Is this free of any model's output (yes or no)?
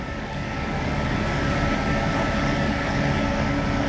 no